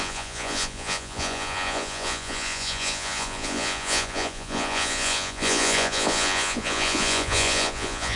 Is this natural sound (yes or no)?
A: no